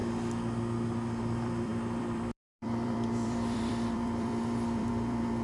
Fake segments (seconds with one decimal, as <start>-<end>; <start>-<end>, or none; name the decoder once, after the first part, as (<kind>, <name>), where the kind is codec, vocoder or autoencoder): 1.2-5.4 (vocoder, BigVGAN v2)